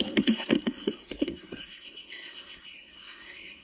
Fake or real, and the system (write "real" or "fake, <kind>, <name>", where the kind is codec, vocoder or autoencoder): fake, codec, SNAC